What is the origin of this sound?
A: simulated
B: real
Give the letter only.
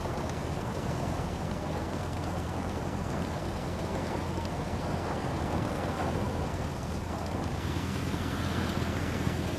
A